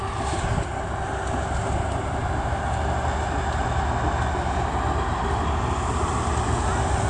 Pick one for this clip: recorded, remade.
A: recorded